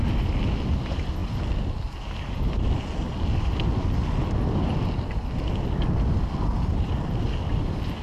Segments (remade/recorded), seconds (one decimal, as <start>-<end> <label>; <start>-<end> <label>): 0.0-8.0 recorded